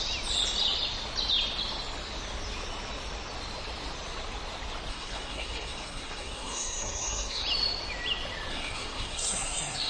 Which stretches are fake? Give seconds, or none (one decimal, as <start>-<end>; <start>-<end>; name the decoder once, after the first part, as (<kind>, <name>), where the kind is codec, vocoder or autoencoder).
4.9-7.4 (codec, SNAC); 8.5-9.9